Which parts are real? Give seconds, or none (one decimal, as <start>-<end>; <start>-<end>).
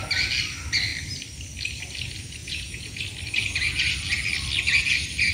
0.0-2.4; 3.0-5.3